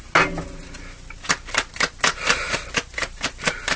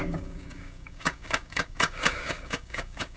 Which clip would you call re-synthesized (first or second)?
second